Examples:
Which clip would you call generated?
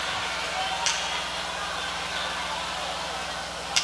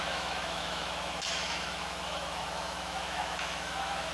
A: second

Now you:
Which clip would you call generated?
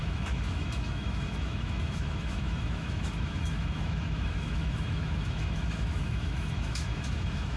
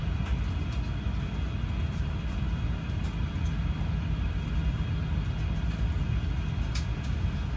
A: first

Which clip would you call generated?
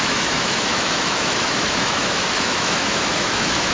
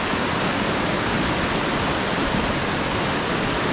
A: first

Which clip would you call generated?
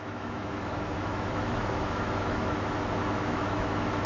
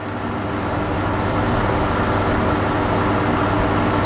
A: first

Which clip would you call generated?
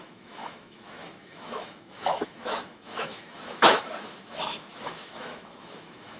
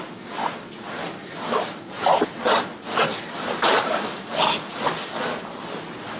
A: first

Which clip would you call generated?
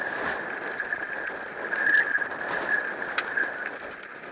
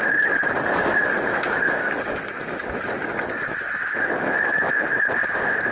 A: second